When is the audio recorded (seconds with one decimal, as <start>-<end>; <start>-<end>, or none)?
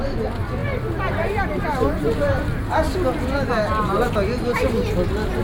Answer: 0.0-5.4